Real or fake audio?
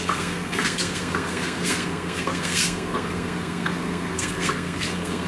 fake